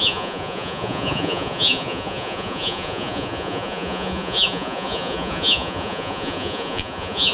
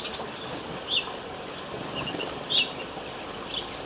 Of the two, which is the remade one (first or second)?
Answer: first